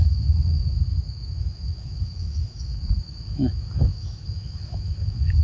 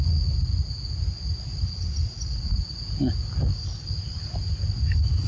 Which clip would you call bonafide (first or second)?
second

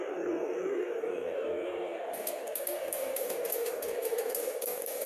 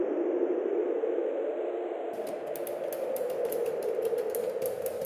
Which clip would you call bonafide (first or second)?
second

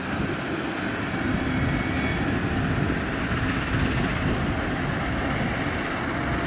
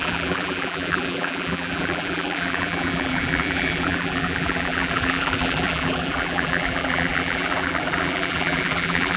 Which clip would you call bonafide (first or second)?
first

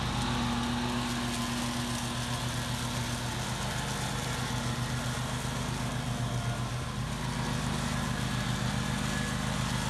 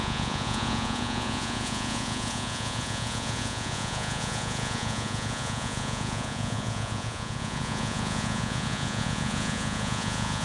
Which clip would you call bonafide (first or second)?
first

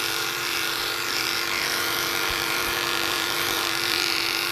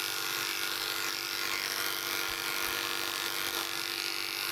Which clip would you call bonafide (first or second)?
second